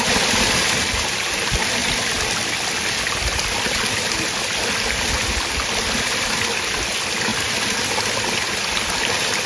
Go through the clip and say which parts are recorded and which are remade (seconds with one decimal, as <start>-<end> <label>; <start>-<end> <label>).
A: 0.0-9.5 recorded